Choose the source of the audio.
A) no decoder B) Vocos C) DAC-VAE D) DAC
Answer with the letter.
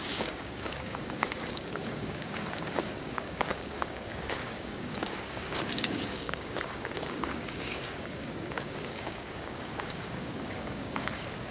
D